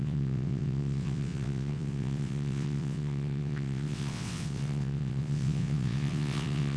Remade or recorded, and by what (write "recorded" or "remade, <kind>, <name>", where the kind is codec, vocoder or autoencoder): remade, vocoder, WaveNeXt